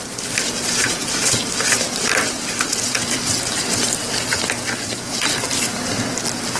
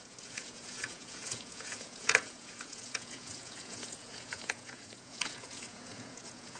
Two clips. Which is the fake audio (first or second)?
second